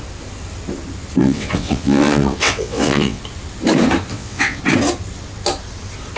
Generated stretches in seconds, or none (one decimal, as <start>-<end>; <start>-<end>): 1.2-3.2; 4.1-4.6